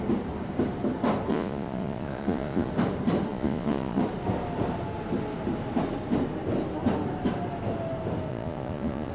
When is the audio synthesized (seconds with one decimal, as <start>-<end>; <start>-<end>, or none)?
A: 1.3-2.7; 3.3-4.0; 8.3-9.1